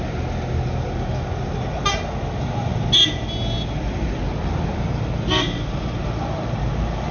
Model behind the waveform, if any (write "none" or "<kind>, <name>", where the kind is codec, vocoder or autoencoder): none